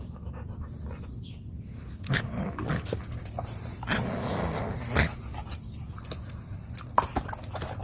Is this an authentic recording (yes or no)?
yes